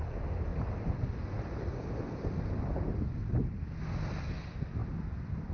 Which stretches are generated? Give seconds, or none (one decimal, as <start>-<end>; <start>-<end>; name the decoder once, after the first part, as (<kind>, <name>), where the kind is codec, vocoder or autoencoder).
none